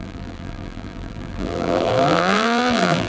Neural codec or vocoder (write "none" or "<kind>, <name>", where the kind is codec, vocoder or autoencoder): vocoder, BigVGAN v2